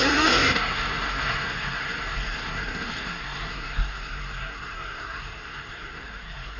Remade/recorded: remade